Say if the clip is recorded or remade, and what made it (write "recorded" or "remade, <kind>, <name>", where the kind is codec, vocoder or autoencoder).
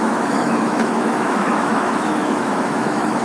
remade, autoencoder, DAC-VAE